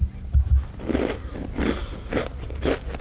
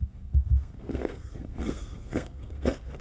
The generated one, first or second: second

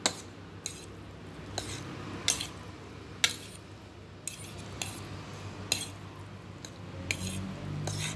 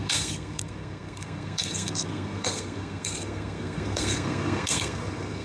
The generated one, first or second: second